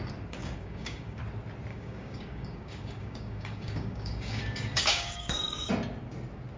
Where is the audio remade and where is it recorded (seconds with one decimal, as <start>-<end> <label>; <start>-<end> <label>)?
0.0-0.4 recorded; 0.4-1.2 remade; 1.2-1.7 recorded; 1.7-5.7 remade; 5.7-6.6 recorded